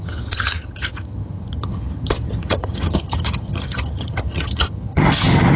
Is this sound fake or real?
fake